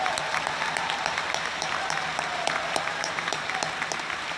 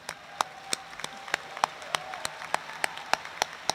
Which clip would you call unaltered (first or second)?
second